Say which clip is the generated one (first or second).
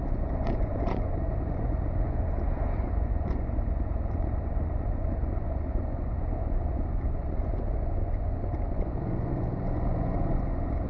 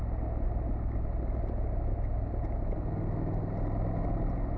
first